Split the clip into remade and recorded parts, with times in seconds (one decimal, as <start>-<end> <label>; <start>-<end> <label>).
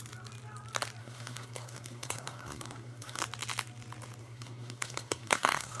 0.0-1.0 recorded; 1.0-3.2 remade; 3.2-4.2 recorded; 4.2-5.8 remade